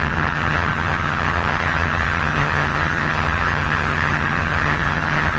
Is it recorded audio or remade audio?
remade